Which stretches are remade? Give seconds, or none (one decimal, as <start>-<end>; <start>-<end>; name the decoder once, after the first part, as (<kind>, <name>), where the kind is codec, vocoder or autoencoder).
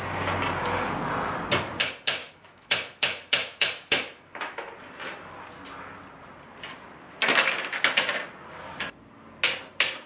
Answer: 2.2-4.7 (autoencoder, DAC-VAE)